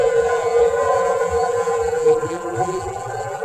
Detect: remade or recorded remade